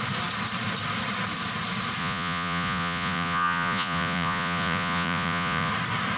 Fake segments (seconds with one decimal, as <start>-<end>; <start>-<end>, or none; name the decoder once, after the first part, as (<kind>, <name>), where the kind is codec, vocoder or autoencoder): 2.0-5.7 (vocoder, Vocos)